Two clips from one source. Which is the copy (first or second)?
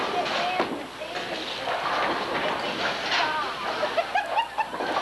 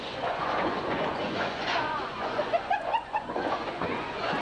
second